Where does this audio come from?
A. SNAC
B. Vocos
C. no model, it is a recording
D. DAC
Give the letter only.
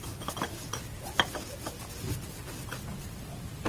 C